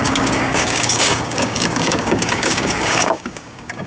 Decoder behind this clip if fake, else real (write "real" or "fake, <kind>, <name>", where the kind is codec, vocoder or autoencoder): fake, codec, DAC